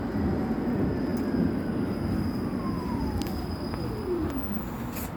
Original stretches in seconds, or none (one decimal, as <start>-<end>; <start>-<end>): 0.0-5.2